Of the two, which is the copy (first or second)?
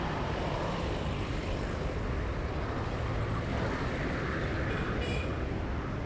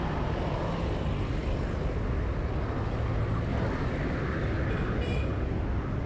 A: first